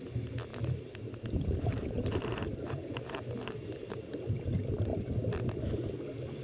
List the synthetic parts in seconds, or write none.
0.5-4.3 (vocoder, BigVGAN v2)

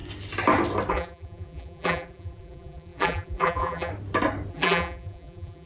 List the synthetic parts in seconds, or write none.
0.9-3.9 (vocoder, BigVGAN v2); 4.5-5.7

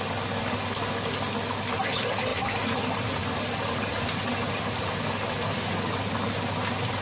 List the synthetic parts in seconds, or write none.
none